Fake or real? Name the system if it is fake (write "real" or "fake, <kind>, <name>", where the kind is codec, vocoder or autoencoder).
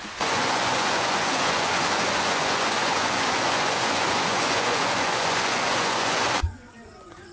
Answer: fake, vocoder, Vocos